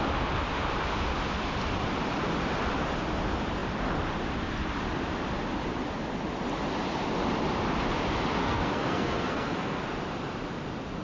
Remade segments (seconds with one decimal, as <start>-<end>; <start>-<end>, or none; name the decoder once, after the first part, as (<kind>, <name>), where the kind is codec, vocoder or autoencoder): 8.4-9.8 (codec, SNAC)